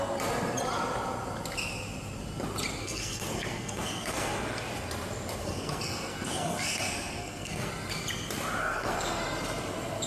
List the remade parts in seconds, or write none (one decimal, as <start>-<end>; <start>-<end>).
2.8-4.7; 5.4-7.7; 8.6-9.2